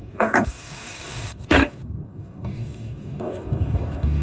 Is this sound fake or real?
fake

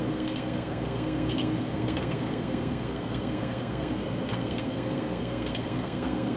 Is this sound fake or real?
fake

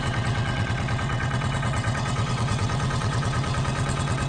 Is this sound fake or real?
fake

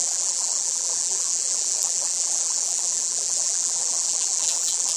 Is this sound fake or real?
fake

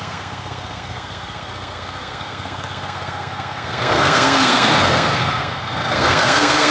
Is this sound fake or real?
fake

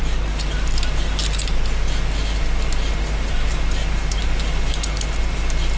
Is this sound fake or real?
real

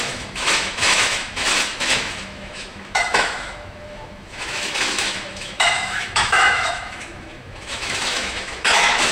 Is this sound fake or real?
fake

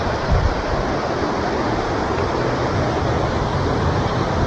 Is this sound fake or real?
real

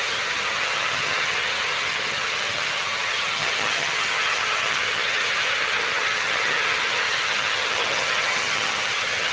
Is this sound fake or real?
fake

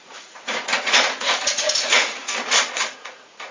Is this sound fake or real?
fake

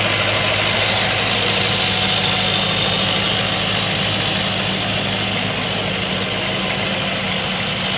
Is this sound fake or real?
real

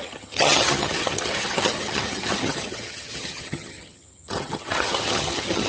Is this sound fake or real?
fake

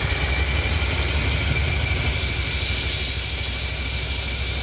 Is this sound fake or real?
real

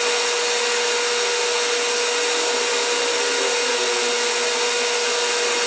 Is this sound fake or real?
real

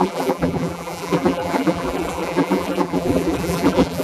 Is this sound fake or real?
fake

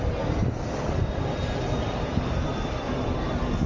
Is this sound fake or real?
real